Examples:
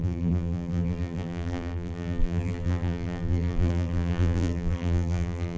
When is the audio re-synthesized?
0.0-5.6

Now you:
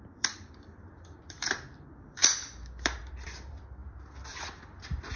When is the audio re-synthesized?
0.0-5.2

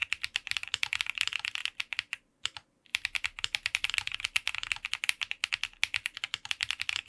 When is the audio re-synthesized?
0.0-1.2; 1.6-2.3

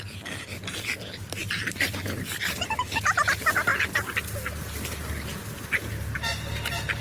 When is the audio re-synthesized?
1.4-2.0

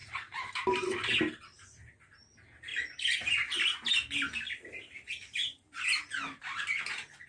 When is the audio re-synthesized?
0.0-0.5

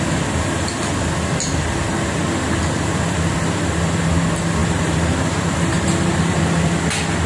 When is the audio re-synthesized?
4.6-6.4